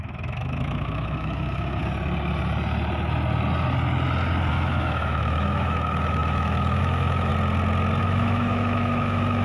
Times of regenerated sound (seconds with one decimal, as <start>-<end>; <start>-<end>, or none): 0.0-1.8; 4.5-7.3; 8.0-9.4